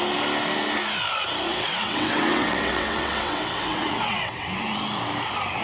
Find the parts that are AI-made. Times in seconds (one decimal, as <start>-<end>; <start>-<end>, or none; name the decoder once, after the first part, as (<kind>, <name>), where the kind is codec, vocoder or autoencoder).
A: 1.5-4.7 (vocoder, WaveNeXt)